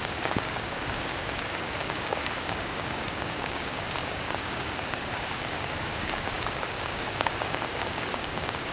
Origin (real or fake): fake